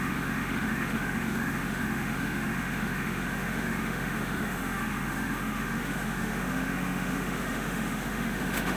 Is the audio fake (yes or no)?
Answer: yes